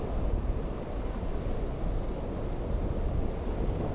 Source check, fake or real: real